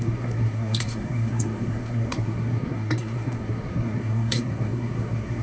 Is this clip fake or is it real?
fake